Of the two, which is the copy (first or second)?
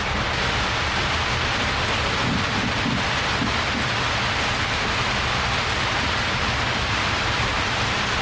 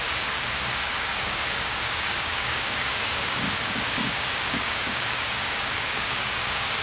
second